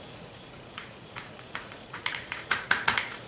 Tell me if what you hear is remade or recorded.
remade